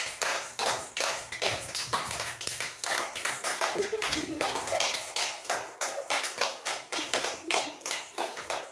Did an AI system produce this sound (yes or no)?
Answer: yes